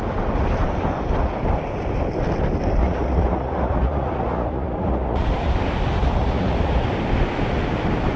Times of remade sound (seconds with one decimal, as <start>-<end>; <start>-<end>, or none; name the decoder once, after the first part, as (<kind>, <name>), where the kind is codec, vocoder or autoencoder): 2.8-5.5 (vocoder, Vocos); 6.2-6.9